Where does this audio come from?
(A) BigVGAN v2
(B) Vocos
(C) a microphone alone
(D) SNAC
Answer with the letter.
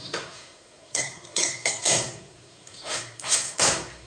D